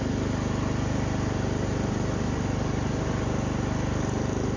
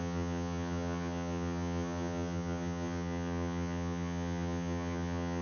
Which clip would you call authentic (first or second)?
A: first